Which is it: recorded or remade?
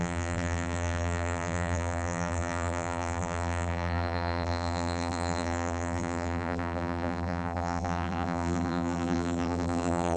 remade